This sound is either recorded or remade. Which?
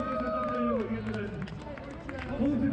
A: recorded